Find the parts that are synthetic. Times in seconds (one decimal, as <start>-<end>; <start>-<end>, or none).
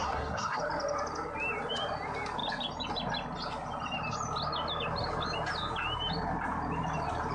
0.0-0.6